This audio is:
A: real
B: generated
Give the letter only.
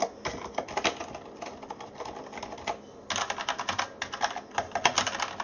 A